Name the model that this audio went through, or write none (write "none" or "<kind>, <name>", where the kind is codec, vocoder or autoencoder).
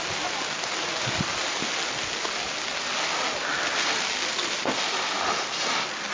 none